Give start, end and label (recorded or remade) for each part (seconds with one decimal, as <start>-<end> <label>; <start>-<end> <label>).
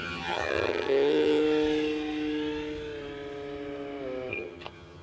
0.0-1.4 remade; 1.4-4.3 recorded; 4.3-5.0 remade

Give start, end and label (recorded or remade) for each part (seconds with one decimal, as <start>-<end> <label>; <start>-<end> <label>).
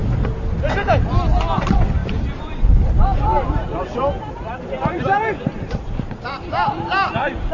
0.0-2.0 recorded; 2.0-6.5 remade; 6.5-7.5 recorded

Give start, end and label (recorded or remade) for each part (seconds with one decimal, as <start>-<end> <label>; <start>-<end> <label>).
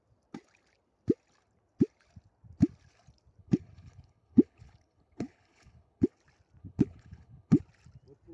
0.0-3.4 recorded; 3.4-6.1 remade; 6.1-6.6 recorded; 6.6-7.6 remade; 7.6-8.3 recorded